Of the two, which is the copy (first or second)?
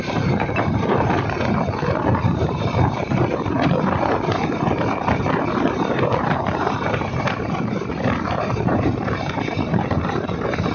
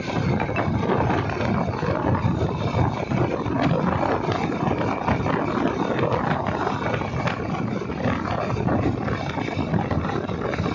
first